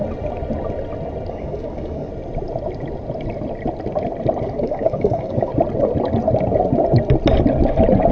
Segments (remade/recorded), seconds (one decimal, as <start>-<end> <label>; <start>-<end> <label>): 0.0-1.3 recorded; 1.3-2.1 remade; 2.1-4.4 recorded; 4.4-5.5 remade; 5.5-8.1 recorded